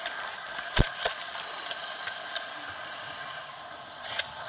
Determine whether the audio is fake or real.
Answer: real